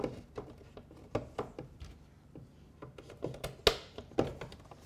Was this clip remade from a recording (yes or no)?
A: no